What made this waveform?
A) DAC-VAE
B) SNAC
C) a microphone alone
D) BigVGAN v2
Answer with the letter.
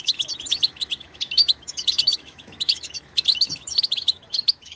A